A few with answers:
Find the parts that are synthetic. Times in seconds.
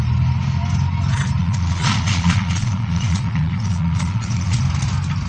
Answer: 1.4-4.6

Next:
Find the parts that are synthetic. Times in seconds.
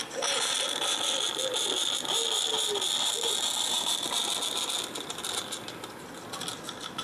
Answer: none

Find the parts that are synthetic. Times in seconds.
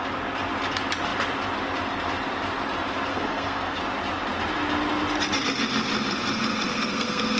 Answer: 3.1-3.8; 6.7-7.4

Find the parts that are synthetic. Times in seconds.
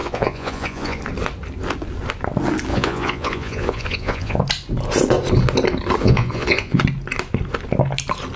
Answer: 0.0-1.0; 2.7-4.4; 6.0-6.8